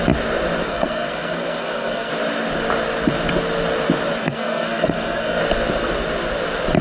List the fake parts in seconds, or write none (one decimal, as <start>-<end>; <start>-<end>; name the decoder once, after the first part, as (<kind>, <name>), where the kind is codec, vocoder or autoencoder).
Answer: 0.7-2.1 (codec, SNAC); 4.2-5.4